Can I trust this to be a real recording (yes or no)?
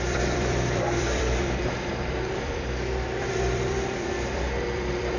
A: no